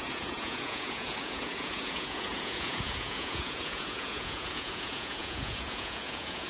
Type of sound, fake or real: fake